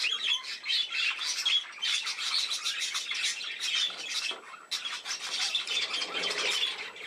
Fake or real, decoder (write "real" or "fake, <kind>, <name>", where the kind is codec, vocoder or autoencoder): real